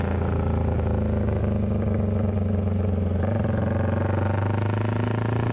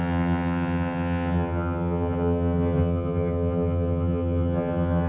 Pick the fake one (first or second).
second